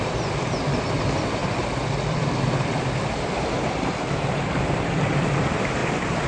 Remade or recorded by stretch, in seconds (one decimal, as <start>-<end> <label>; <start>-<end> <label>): 0.0-6.3 recorded